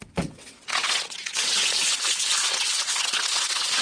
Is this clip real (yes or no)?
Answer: no